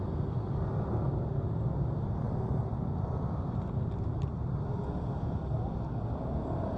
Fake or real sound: real